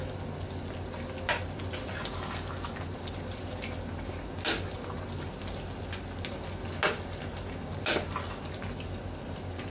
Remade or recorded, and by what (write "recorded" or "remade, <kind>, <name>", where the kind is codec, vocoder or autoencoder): recorded